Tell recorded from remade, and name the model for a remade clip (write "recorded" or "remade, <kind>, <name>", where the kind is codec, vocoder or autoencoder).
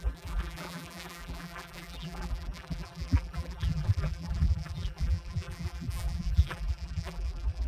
remade, vocoder, BigVGAN v2